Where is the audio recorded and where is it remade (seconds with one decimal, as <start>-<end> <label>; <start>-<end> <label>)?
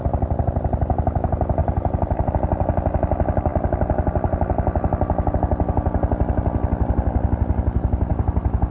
0.0-1.6 recorded; 1.6-2.3 remade; 2.3-8.7 recorded